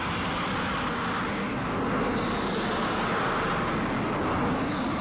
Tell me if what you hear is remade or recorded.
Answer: recorded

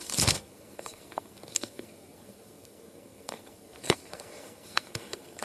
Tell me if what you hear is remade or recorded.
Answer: remade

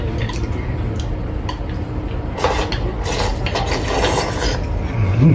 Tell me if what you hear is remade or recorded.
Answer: recorded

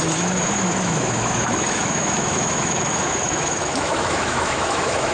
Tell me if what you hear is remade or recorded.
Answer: remade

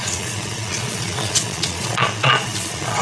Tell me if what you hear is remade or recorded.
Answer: remade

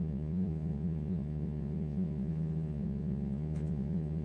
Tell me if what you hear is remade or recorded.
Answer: remade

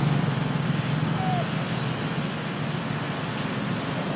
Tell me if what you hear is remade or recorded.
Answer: recorded